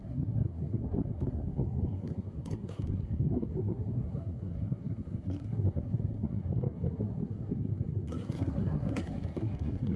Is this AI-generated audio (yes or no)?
yes